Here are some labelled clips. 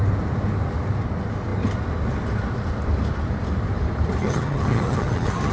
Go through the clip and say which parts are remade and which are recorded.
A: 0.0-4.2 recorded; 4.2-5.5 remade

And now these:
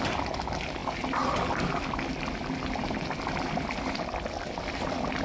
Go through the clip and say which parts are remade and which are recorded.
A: 0.0-5.2 recorded

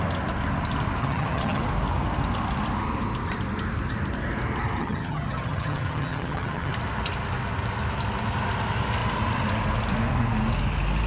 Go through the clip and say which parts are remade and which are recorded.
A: 0.0-1.0 recorded; 1.0-1.6 remade; 1.6-4.8 recorded; 4.8-6.7 remade; 6.7-11.1 recorded

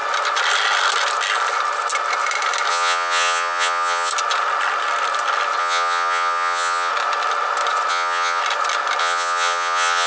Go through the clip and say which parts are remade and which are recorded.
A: 0.0-2.7 recorded; 2.7-4.1 remade; 4.1-5.6 recorded; 5.6-6.9 remade; 6.9-7.9 recorded; 7.9-8.4 remade; 8.4-9.0 recorded; 9.0-10.1 remade

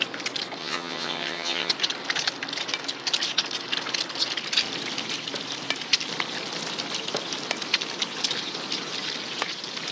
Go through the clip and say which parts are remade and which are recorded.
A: 0.0-0.6 recorded; 0.6-1.7 remade; 1.7-9.9 recorded